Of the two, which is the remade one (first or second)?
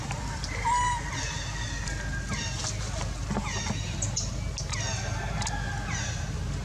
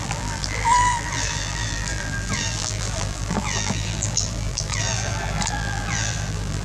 second